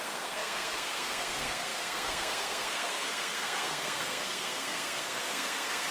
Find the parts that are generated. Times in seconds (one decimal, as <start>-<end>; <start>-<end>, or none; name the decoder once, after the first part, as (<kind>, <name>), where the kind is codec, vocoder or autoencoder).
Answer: 0.0-5.9 (codec, SNAC)